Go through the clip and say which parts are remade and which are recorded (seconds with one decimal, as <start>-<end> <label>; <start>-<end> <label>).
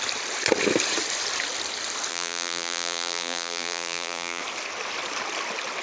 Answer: 0.0-2.1 recorded; 2.1-4.4 remade; 4.4-5.8 recorded